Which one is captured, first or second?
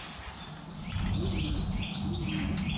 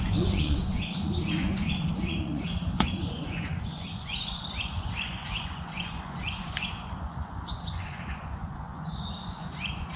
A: first